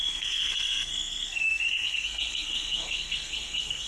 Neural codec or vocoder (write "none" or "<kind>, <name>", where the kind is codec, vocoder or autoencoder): codec, SNAC